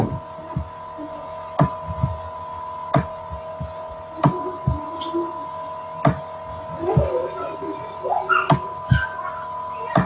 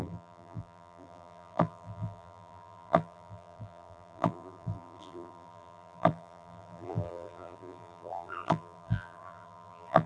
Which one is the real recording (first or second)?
first